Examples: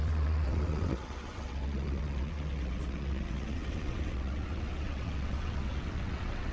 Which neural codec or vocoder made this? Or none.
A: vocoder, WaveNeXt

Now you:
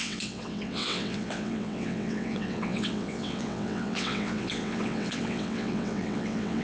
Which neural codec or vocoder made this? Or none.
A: vocoder, WaveNeXt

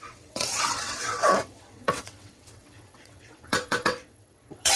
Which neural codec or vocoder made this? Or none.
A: vocoder, WaveNeXt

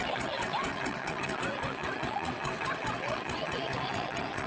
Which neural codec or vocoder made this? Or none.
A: vocoder, WaveNeXt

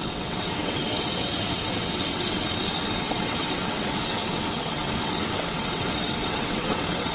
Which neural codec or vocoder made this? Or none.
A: vocoder, WaveNeXt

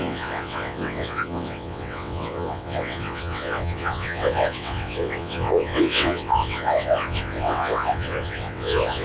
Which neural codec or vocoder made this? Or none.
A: vocoder, WaveNeXt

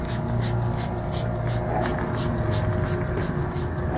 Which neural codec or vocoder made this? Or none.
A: none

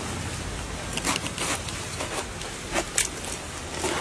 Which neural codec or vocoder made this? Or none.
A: none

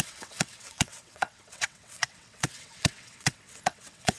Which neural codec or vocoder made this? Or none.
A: vocoder, WaveNeXt